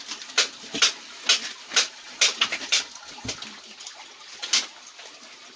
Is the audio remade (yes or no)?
no